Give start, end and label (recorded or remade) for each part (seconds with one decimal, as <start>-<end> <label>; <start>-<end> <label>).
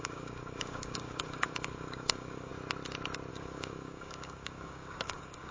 0.0-2.5 remade; 2.5-3.3 recorded; 3.3-5.5 remade